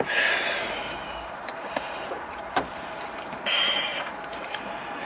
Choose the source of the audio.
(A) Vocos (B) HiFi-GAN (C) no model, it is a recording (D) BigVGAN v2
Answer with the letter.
D